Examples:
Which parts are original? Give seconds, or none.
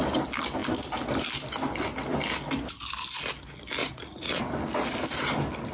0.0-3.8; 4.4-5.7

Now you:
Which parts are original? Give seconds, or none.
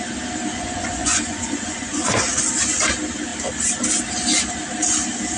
0.0-0.5; 2.3-5.4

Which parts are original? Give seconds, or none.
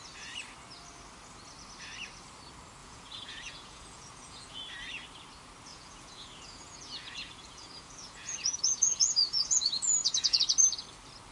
0.0-2.8; 4.6-5.7; 10.4-11.3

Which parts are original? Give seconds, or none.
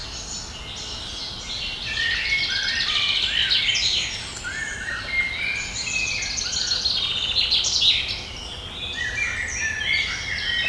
0.0-10.7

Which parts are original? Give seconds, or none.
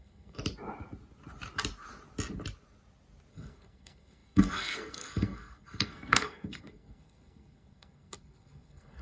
0.4-3.3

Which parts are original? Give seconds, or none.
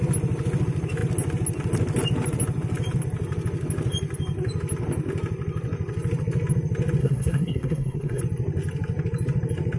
0.0-7.0; 8.2-9.8